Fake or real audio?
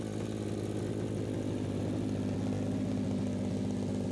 real